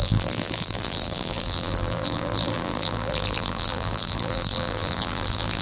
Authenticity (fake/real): fake